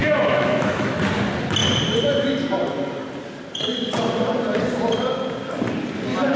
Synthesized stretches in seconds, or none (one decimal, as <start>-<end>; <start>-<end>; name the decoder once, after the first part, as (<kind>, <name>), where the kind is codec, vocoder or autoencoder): 0.0-1.0 (autoencoder, DAC-VAE)

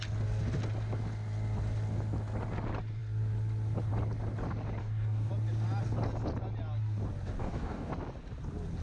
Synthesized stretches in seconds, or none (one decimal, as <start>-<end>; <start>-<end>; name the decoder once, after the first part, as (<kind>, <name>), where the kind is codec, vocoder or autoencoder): 4.8-5.3 (codec, DAC); 7.4-7.9

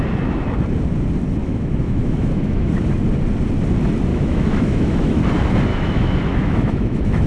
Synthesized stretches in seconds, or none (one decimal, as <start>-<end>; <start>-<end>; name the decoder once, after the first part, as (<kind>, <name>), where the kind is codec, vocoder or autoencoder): 1.4-2.7 (autoencoder, DAC-VAE); 4.1-5.2; 5.7-7.3